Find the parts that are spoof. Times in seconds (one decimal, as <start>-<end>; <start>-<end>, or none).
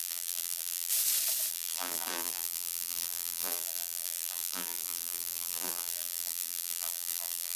0.0-0.9; 1.5-7.6